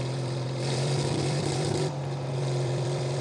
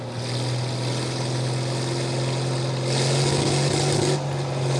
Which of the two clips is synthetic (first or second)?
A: first